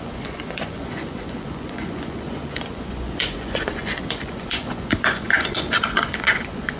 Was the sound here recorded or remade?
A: remade